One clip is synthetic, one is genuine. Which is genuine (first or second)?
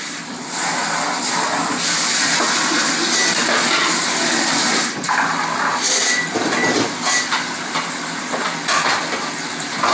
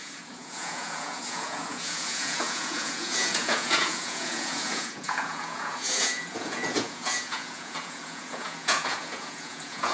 first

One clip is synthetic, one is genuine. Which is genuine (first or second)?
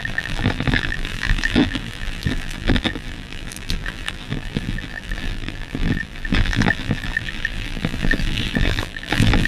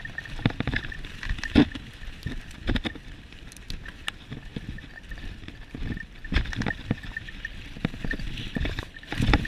second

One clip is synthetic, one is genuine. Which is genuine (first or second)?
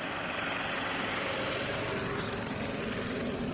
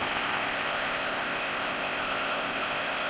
first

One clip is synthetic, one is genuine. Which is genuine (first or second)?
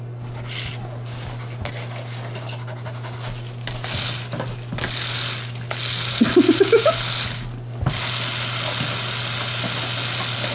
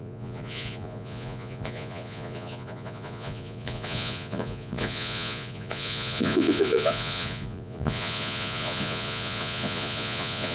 first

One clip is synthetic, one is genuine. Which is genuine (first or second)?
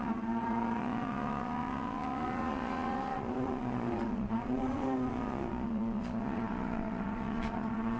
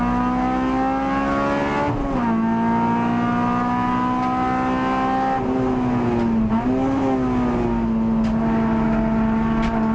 second